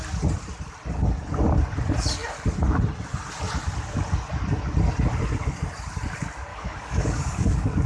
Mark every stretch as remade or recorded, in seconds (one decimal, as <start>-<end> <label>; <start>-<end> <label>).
0.0-6.5 recorded; 6.5-7.9 remade